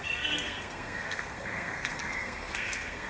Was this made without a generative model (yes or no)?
no